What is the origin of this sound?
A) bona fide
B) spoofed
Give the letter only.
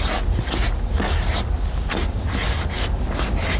A